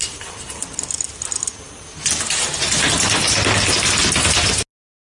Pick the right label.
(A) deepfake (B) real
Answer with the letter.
B